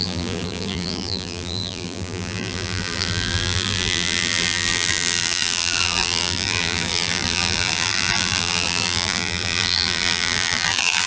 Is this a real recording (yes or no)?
no